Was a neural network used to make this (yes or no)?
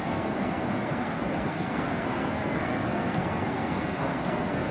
yes